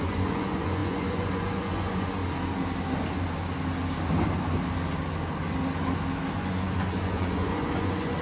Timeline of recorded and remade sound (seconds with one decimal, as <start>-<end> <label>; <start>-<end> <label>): 0.0-2.2 remade; 2.2-6.3 recorded; 6.3-8.2 remade